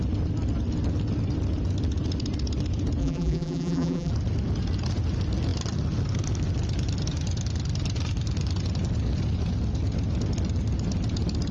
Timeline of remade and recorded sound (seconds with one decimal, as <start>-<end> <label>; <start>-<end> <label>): 0.0-3.0 recorded; 3.0-4.1 remade; 4.1-11.5 recorded